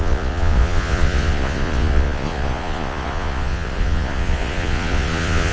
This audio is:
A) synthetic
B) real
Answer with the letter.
A